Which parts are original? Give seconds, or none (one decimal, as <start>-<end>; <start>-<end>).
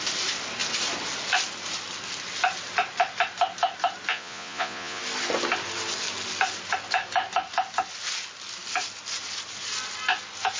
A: 0.0-4.1; 5.0-10.6